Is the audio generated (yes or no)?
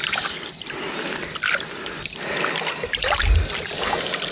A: no